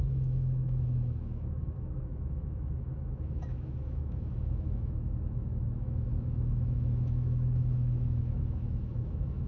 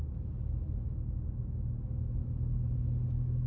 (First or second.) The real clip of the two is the second